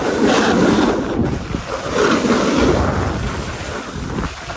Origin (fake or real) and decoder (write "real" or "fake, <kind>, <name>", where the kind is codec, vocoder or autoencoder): real